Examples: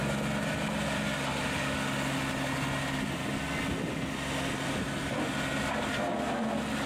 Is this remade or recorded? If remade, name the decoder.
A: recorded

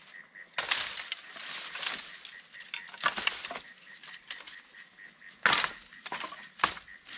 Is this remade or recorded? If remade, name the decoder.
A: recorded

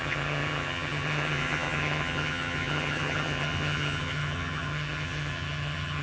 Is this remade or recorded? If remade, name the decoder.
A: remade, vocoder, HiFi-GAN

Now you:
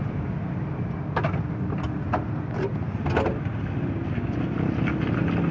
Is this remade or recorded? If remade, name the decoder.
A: recorded